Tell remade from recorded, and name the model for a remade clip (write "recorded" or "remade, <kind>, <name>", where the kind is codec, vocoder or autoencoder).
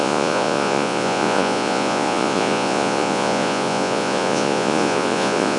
remade, vocoder, Vocos